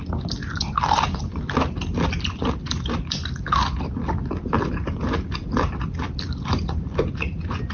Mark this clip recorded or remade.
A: recorded